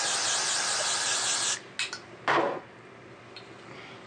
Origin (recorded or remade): recorded